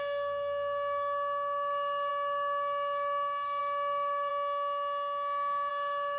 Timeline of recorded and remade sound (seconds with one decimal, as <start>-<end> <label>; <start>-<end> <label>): 0.0-4.3 remade; 4.3-5.7 recorded; 5.7-6.2 remade